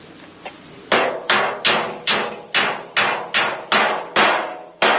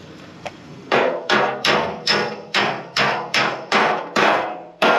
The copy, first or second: second